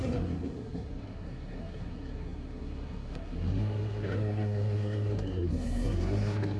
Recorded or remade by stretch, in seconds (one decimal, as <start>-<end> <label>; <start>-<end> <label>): 0.0-6.6 remade